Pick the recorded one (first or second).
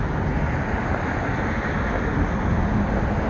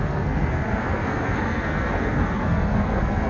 first